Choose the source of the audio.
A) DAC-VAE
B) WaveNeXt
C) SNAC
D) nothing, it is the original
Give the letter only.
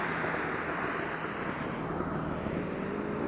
D